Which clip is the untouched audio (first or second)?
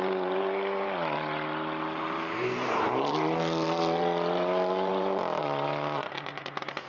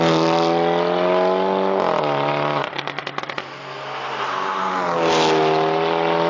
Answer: second